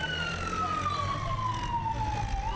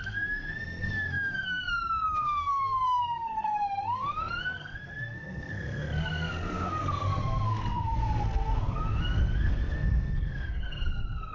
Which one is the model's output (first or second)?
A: second